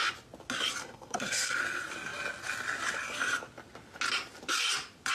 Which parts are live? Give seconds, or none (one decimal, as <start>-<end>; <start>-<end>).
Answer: 0.0-0.8; 1.6-5.1